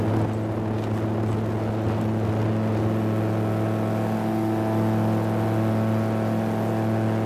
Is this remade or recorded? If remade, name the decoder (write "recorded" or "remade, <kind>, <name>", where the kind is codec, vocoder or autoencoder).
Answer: recorded